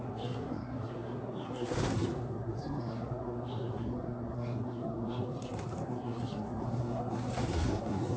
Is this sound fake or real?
fake